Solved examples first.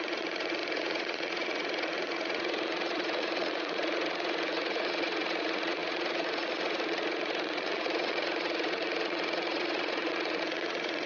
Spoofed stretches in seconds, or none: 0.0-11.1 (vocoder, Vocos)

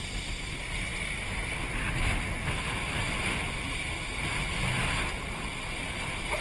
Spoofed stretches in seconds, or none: none

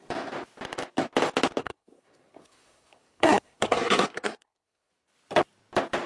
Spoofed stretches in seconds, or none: 1.6-4.9 (codec, SNAC)